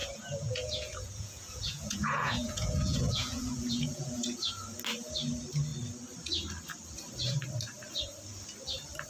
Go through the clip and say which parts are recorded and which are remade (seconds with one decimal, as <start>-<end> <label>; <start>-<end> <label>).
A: 0.0-4.5 remade; 4.5-9.1 recorded